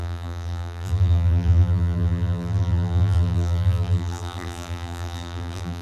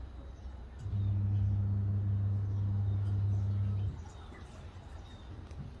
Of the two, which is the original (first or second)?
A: second